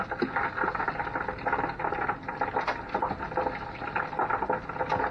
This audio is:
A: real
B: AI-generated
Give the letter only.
A